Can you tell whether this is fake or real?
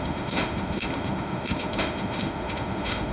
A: fake